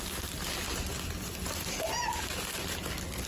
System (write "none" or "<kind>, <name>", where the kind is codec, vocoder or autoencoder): none